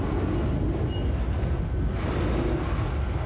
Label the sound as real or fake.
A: real